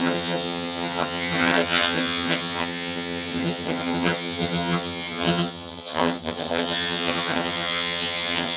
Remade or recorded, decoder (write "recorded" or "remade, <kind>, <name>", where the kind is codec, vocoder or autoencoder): remade, vocoder, HiFi-GAN